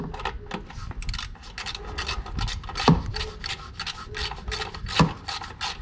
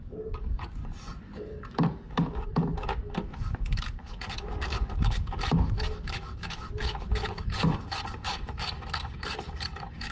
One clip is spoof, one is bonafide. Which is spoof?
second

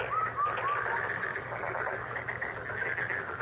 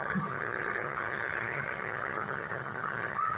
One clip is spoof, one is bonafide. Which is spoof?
second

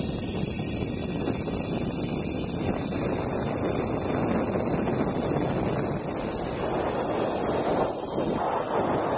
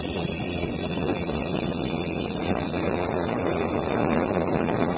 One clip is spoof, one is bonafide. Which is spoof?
second